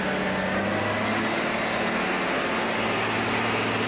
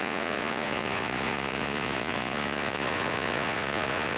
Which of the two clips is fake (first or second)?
second